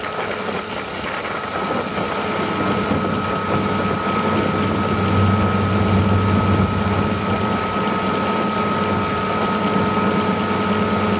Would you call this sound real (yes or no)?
yes